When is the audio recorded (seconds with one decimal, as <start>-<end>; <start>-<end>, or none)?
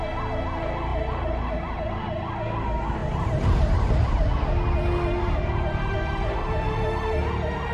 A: 0.0-0.9; 1.5-3.0; 4.3-7.7